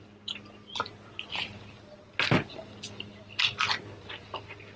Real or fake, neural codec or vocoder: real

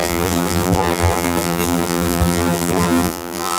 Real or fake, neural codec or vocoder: fake, vocoder, BigVGAN v2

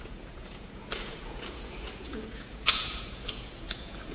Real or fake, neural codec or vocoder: fake, vocoder, Vocos